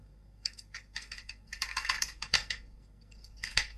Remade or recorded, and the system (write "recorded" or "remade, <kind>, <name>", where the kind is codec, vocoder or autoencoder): remade, codec, SNAC